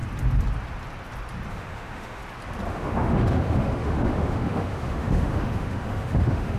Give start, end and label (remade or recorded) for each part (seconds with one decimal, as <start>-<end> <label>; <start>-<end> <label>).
0.0-1.5 recorded; 1.5-2.2 remade; 2.2-2.7 recorded; 2.7-6.6 remade